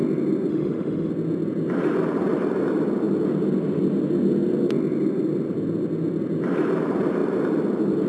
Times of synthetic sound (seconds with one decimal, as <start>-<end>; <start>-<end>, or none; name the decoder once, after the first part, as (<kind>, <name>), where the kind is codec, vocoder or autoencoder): 0.5-1.1 (autoencoder, DAC-VAE)